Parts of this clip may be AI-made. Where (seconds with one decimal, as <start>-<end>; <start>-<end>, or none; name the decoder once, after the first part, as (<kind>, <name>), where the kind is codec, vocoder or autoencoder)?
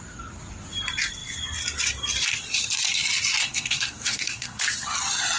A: 3.4-4.6 (codec, SNAC)